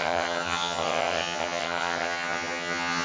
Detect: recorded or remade remade